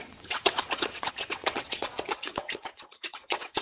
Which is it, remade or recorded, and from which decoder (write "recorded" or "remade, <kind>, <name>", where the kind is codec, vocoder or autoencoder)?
remade, vocoder, WaveNeXt